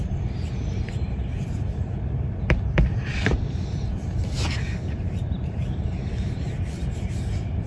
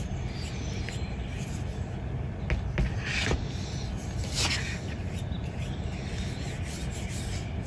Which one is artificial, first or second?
first